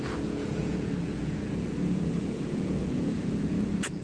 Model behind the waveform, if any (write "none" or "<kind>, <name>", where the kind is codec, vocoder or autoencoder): vocoder, Vocos